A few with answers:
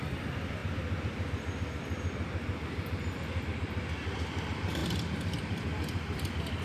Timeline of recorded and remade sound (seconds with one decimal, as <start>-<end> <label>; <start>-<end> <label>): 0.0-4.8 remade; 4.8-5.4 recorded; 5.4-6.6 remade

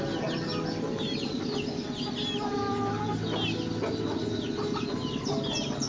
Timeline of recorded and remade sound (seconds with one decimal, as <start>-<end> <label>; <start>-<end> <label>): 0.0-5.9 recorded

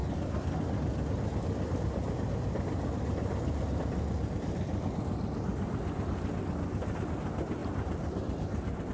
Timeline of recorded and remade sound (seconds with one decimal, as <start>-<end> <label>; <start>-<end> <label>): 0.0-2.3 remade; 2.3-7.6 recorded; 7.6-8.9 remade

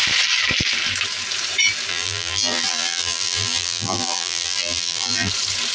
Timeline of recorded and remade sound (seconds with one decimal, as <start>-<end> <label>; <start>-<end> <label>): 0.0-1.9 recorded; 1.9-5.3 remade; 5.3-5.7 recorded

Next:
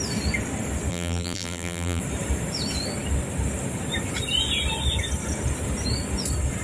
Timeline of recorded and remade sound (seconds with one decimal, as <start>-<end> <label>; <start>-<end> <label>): 0.0-0.9 recorded; 0.9-2.0 remade; 2.0-6.6 recorded

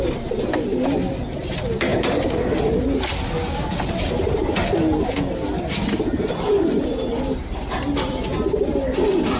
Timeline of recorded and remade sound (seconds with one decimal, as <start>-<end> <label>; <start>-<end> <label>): 0.0-9.4 recorded

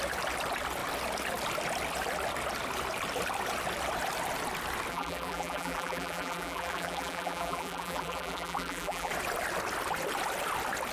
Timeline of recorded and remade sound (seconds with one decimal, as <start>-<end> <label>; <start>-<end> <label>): 0.0-4.9 recorded; 4.9-9.1 remade; 9.1-10.9 recorded

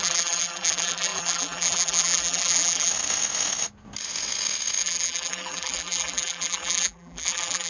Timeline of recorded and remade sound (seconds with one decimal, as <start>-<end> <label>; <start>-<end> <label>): 0.0-2.9 remade; 2.9-4.8 recorded; 4.8-7.7 remade